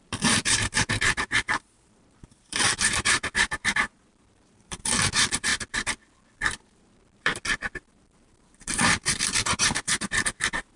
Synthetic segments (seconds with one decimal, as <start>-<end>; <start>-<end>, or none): 0.0-5.5; 6.6-7.3; 7.8-10.8